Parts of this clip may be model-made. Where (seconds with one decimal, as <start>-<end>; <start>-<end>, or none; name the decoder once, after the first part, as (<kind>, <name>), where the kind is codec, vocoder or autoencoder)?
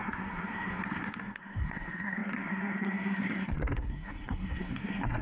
0.0-5.2 (codec, SNAC)